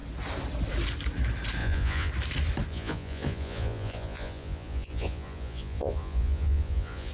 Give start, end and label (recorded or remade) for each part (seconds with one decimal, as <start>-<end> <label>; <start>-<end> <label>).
0.0-1.6 recorded; 1.6-2.1 remade; 2.1-2.7 recorded; 2.7-7.1 remade